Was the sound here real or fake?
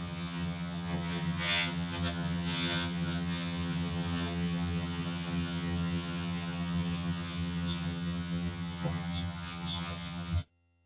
fake